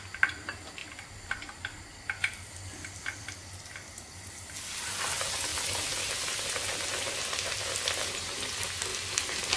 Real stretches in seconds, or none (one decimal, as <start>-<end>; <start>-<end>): 0.0-0.8; 1.8-2.3; 3.7-5.5; 6.1-9.6